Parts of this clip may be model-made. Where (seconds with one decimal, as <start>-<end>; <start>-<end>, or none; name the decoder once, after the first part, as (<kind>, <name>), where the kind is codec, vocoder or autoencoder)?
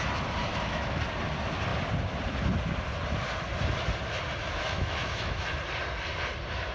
0.5-1.0 (autoencoder, DAC-VAE); 4.4-5.5